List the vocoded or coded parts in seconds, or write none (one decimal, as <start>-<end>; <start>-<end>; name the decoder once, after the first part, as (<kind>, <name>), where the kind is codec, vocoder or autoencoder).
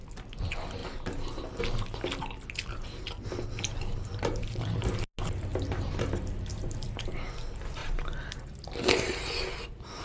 4.1-4.8 (vocoder, BigVGAN v2); 5.5-7.3; 7.8-8.6